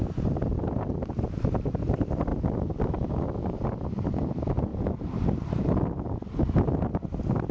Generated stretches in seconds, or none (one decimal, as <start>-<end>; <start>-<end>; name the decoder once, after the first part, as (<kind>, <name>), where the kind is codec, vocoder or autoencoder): 2.3-2.8 (vocoder, BigVGAN v2)